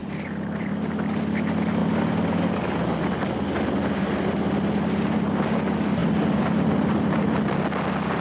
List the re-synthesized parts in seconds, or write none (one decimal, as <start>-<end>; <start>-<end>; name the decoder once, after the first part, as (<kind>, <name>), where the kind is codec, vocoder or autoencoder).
0.0-0.7 (vocoder, BigVGAN v2)